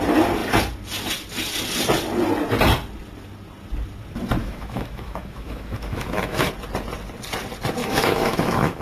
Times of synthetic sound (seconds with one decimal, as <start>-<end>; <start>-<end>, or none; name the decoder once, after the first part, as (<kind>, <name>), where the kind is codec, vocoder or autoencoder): 4.4-6.5 (autoencoder, DAC-VAE); 7.8-8.8